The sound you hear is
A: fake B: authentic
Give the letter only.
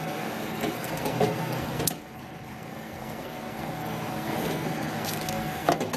A